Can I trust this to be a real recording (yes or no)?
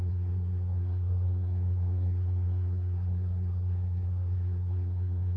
no